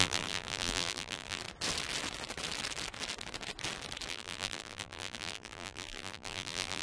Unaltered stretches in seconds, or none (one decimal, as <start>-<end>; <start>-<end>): 1.4-4.1

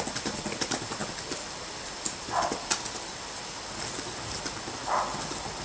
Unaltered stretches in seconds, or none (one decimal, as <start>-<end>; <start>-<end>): 0.0-5.6

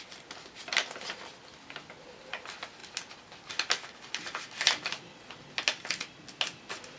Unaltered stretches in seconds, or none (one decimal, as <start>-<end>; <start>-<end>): 0.0-7.0

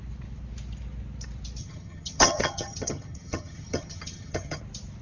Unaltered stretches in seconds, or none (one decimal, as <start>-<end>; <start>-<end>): 0.0-1.6; 4.6-5.0

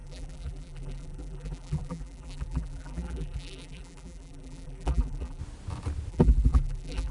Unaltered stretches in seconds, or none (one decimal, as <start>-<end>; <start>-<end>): 5.4-6.1

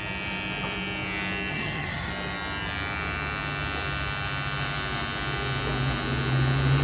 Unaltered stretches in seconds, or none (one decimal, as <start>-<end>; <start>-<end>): 0.0-1.5; 2.1-6.8

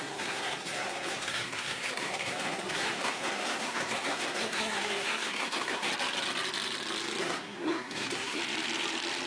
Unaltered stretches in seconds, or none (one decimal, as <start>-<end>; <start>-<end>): 5.9-7.2; 8.4-9.3

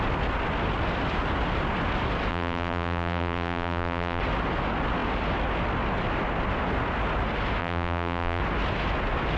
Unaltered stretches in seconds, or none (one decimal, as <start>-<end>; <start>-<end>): 0.0-2.3; 4.2-7.6; 8.4-9.4